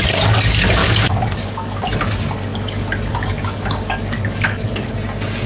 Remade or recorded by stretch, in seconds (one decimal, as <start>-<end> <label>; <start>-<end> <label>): 0.0-0.8 recorded; 0.8-1.8 remade; 1.8-2.5 recorded; 2.5-4.9 remade; 4.9-5.5 recorded